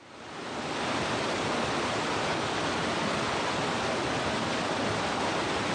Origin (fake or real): real